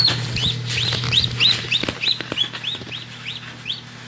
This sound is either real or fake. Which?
real